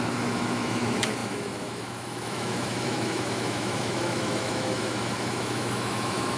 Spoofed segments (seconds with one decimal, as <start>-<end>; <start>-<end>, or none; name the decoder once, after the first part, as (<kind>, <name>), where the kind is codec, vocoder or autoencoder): 0.0-6.4 (autoencoder, DAC-VAE)